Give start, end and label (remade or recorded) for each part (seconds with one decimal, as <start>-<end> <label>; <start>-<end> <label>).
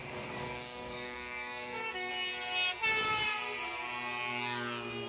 0.0-2.1 remade; 2.1-5.1 recorded